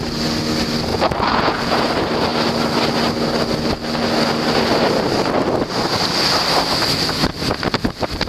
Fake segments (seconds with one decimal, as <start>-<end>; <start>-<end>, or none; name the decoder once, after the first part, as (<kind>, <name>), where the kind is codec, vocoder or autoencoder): 0.9-1.9 (vocoder, Vocos)